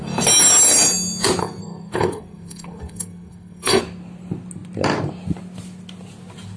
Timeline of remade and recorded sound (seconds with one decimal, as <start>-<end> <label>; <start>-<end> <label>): 0.0-1.4 recorded; 1.4-3.8 remade; 3.8-6.6 recorded